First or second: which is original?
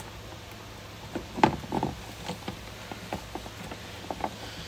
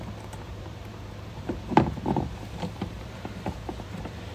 first